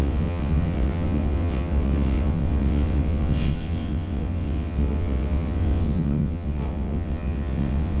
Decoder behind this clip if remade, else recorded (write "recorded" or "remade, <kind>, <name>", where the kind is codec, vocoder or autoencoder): remade, vocoder, WaveNeXt